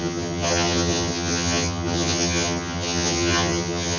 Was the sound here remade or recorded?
remade